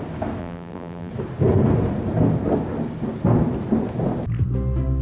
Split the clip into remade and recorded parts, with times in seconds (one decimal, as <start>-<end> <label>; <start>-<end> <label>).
0.0-0.4 recorded; 0.4-1.1 remade; 1.1-5.0 recorded